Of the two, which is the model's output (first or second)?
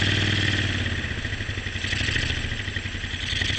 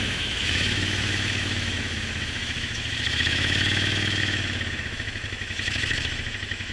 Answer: second